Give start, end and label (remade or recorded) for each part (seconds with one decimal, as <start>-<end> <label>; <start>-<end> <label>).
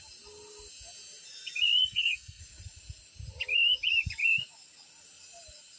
0.0-1.8 recorded; 1.8-2.4 remade; 2.4-5.8 recorded